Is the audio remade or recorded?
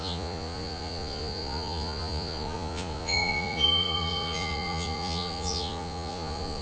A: remade